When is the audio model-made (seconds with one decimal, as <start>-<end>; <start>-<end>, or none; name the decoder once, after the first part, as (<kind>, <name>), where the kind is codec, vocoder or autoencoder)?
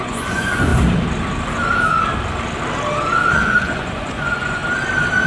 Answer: 0.0-0.7 (vocoder, Vocos); 3.3-4.6